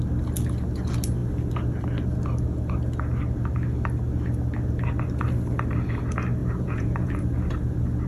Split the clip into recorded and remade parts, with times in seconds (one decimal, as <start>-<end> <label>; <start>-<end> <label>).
0.0-6.4 recorded; 6.4-7.2 remade; 7.2-8.1 recorded